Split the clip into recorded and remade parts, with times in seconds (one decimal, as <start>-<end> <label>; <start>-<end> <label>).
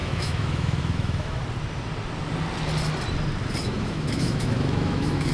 0.0-1.4 remade; 1.4-3.6 recorded; 3.6-5.3 remade